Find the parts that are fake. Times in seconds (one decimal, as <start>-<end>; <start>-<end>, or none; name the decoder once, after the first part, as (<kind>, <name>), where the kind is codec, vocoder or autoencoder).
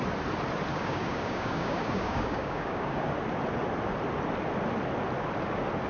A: 0.7-3.1 (codec, DAC)